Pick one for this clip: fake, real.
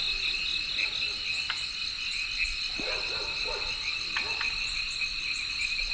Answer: real